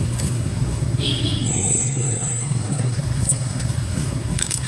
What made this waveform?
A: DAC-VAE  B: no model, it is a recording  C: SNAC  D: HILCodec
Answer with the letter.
C